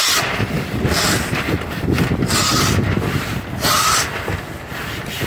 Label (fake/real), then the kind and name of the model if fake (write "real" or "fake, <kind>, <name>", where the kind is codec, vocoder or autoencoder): real